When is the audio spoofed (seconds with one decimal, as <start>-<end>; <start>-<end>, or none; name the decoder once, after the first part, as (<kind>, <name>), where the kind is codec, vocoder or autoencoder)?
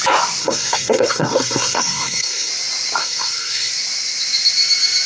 0.4-2.5 (codec, SNAC); 3.0-3.7